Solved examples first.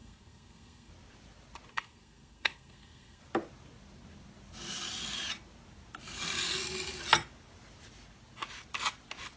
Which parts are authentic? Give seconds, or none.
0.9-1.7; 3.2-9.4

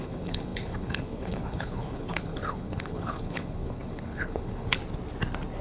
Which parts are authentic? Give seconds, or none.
4.8-5.6

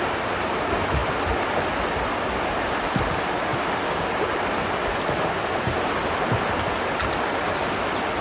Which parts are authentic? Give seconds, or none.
0.0-8.2

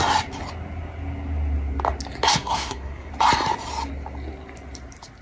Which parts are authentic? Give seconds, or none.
0.0-2.3; 3.1-5.2

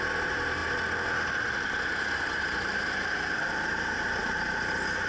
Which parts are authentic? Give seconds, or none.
0.0-5.1

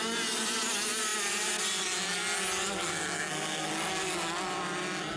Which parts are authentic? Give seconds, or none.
0.0-2.9; 3.7-5.2